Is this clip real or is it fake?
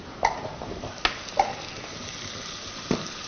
real